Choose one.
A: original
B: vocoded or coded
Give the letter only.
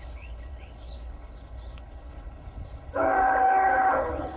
B